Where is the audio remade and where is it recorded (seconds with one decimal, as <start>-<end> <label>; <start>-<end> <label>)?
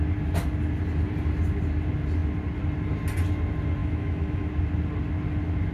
0.0-3.8 recorded; 3.8-4.5 remade; 4.5-5.7 recorded